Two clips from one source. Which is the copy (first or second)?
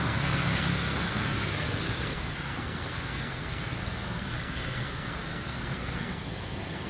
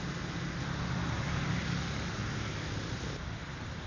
first